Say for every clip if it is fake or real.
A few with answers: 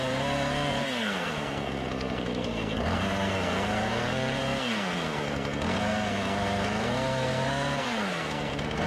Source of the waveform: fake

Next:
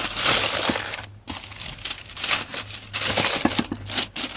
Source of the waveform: real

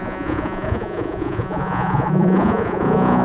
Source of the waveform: fake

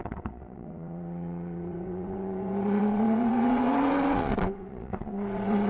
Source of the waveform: fake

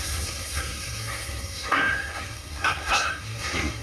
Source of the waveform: fake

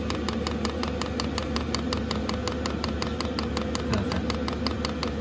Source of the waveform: real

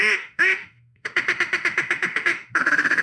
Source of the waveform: fake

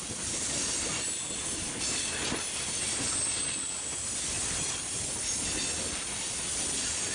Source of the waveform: real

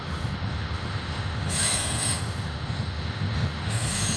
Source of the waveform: fake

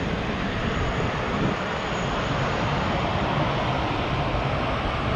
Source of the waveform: real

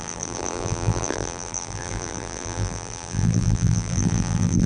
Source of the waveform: fake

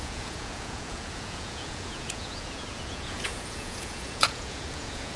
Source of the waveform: fake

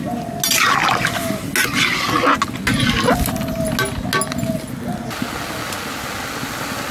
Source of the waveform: real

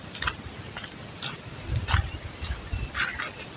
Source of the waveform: real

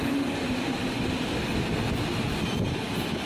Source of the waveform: real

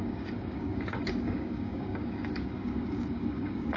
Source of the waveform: fake